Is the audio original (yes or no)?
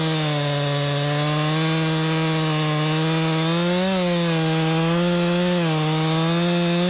yes